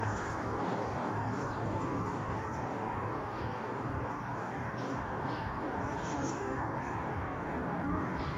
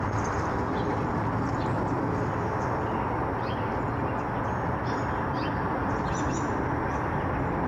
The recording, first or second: second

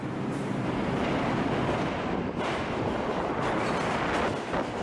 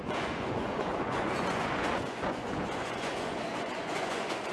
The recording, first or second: first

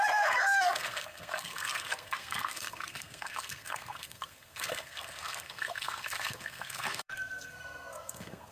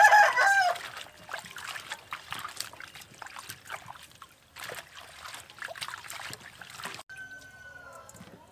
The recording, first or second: second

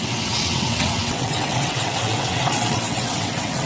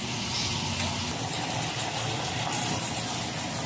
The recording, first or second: second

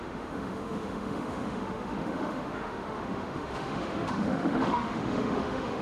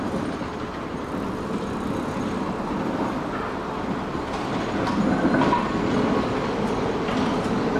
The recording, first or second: second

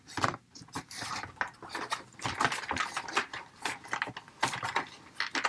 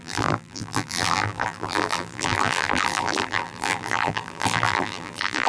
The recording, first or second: first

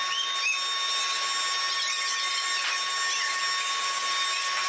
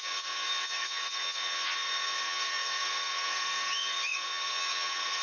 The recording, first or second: first